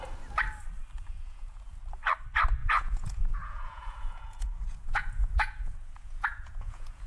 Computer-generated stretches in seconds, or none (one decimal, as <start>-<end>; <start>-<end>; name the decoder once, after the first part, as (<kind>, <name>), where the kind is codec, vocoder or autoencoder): 1.1-1.7 (vocoder, Vocos); 2.6-7.1